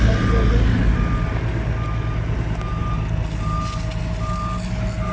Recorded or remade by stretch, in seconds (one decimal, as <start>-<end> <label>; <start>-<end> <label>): 0.0-5.1 recorded